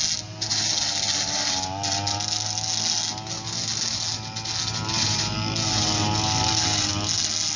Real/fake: real